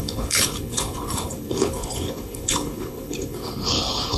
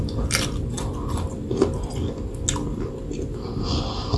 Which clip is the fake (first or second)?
first